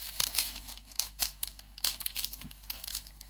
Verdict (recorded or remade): remade